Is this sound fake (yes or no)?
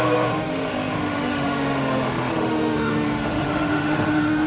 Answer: yes